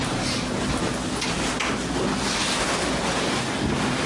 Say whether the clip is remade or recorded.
recorded